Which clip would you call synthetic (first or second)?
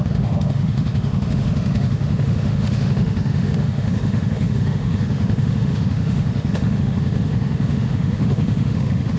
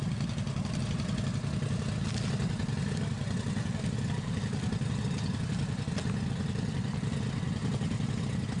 first